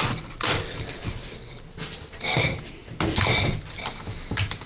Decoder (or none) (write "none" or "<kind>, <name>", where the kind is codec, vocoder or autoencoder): none